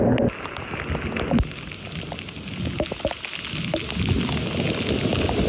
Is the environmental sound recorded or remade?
recorded